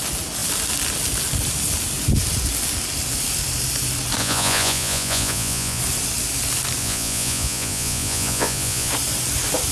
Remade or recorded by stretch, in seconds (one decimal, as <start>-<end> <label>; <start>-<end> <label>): 0.0-4.2 recorded; 4.2-5.8 remade; 5.8-6.8 recorded; 6.8-8.9 remade; 8.9-9.7 recorded